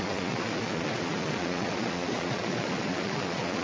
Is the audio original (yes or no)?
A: no